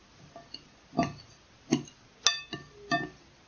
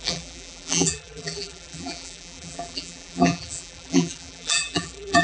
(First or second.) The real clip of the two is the first